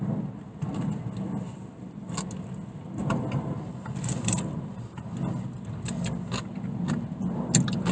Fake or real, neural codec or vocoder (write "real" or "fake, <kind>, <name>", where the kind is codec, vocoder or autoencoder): real